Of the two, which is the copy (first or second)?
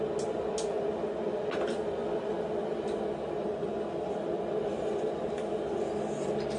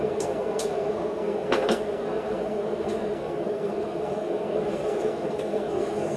second